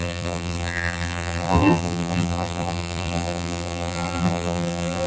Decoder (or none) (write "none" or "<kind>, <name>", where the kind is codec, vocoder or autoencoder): vocoder, BigVGAN v2